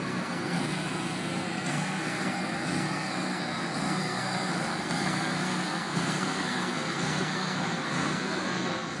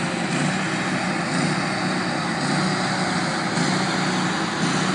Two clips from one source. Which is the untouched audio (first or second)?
second